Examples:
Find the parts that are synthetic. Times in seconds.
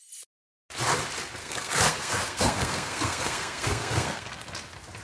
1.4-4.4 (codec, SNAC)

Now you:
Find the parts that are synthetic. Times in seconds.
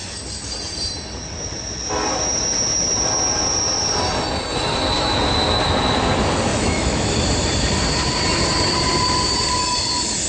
6.5-7.1 (autoencoder, DAC-VAE)